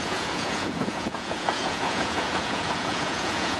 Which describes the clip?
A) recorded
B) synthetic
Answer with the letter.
B